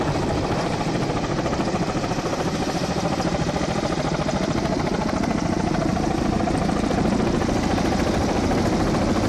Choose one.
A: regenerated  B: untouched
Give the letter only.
B